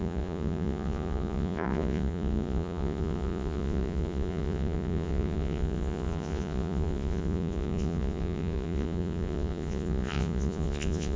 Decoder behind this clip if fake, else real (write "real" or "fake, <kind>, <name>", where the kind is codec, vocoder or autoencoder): fake, vocoder, Vocos